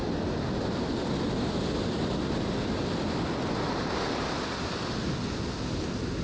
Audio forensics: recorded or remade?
recorded